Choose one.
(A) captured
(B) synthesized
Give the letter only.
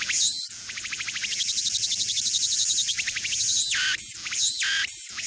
B